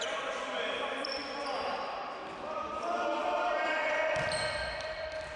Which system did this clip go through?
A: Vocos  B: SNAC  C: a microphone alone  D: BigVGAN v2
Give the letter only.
D